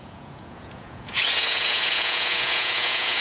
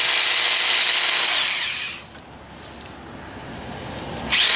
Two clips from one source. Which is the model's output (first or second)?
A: first